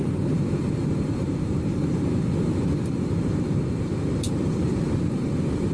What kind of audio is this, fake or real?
fake